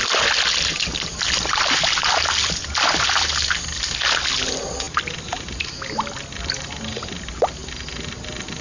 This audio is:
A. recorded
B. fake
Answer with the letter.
A